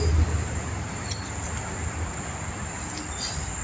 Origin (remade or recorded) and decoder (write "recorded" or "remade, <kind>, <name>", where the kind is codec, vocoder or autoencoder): recorded